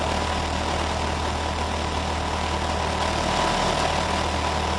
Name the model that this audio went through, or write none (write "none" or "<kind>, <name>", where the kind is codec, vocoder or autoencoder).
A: none